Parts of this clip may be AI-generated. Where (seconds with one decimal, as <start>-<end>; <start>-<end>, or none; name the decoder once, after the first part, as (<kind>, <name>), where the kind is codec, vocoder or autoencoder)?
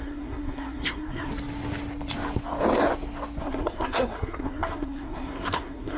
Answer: 0.0-1.3 (codec, SNAC); 3.4-6.0